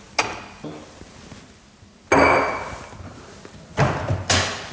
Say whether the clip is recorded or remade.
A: recorded